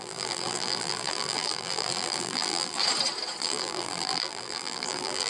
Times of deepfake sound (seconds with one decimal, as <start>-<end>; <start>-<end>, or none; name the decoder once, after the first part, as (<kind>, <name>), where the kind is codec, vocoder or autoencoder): 0.0-2.8 (vocoder, BigVGAN v2); 3.4-5.3